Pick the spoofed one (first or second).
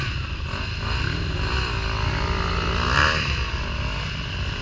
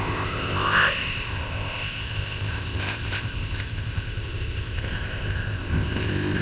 second